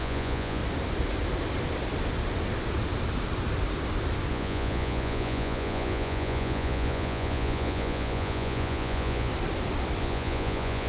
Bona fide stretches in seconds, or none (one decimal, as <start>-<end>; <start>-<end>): 0.6-4.3; 9.3-10.0